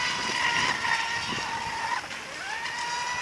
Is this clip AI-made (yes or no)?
no